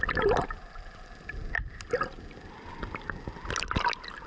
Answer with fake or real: real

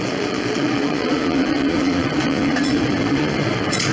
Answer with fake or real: fake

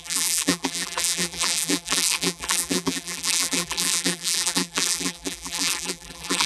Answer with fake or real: fake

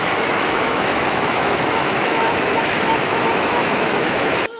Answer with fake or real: fake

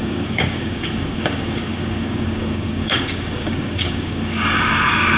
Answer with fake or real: fake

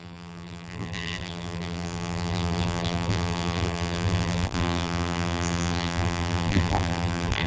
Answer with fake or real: fake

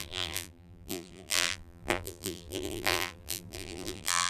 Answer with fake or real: fake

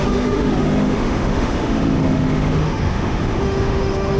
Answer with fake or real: fake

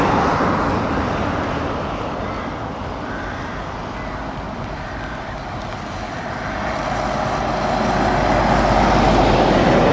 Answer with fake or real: real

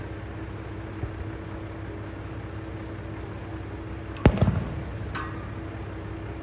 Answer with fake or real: real